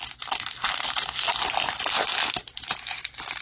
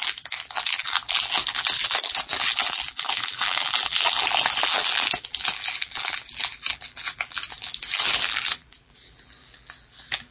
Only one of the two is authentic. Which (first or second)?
first